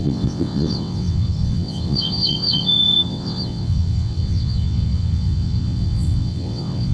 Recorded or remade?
remade